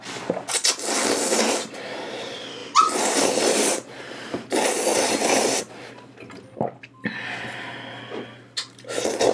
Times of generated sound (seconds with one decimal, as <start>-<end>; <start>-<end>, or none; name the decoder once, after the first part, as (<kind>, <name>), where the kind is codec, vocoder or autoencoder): 2.6-5.6 (vocoder, BigVGAN v2)